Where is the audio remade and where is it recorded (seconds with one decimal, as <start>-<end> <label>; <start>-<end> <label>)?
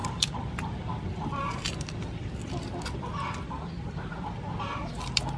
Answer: 0.0-5.4 recorded